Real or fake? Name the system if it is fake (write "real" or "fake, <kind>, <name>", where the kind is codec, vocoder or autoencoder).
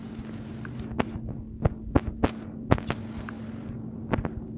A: real